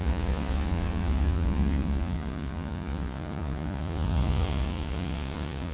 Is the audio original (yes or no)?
no